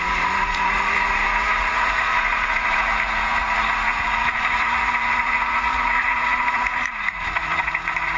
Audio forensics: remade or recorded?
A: remade